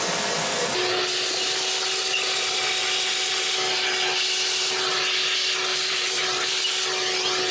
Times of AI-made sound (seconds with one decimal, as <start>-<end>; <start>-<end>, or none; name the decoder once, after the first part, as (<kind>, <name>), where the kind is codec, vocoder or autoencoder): 5.7-6.5 (vocoder, BigVGAN v2)